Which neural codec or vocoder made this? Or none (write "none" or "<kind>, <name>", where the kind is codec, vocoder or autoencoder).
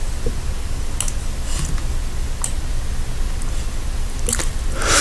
none